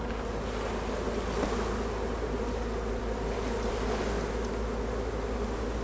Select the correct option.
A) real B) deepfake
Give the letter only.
A